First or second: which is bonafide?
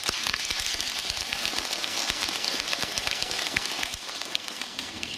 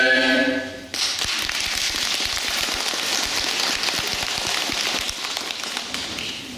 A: second